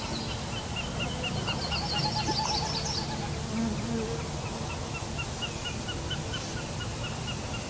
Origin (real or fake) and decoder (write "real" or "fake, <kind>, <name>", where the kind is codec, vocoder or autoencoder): real